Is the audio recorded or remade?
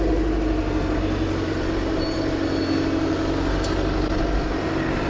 recorded